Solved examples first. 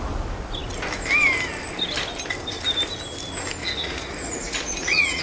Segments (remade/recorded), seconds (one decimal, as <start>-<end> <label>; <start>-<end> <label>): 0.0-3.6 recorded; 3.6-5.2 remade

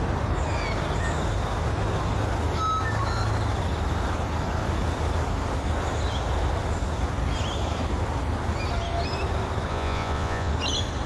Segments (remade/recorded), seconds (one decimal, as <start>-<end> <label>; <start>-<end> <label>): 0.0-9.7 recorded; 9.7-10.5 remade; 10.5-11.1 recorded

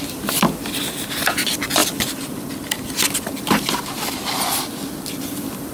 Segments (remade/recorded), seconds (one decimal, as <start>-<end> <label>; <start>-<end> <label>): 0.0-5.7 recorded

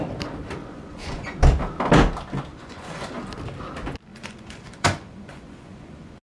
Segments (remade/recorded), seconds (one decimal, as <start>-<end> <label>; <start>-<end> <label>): 0.0-0.6 recorded; 0.6-1.4 remade; 1.4-2.5 recorded; 2.5-3.1 remade; 3.1-4.1 recorded; 4.1-6.2 remade